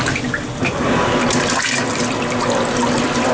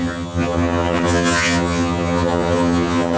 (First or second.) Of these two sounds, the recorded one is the first